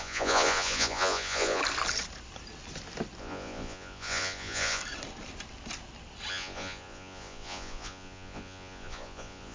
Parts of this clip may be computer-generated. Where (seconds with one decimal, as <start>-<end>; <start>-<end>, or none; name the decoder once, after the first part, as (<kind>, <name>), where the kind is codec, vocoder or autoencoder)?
0.0-1.6 (vocoder, Vocos); 3.2-4.8; 6.3-9.5